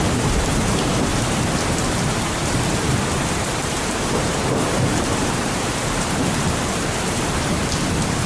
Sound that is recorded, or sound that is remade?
remade